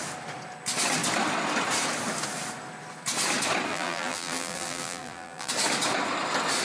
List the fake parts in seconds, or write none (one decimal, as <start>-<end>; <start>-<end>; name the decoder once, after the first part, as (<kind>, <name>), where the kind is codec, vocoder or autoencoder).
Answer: 3.7-5.5 (vocoder, BigVGAN v2)